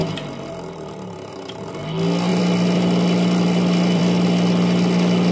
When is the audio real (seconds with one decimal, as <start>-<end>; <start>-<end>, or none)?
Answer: 1.3-2.3; 4.0-5.3